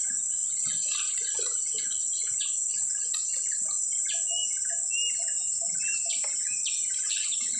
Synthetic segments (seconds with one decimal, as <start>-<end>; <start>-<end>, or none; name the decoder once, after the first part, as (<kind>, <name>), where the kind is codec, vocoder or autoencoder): none